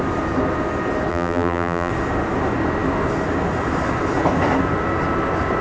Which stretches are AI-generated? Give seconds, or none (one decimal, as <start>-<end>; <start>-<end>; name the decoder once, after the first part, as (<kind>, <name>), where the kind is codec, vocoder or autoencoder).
1.1-1.9 (vocoder, BigVGAN v2)